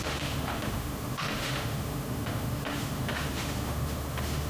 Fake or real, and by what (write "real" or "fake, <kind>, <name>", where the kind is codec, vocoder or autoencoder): fake, autoencoder, DAC-VAE